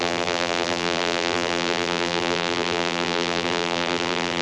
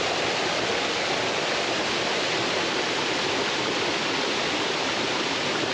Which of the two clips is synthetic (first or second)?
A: first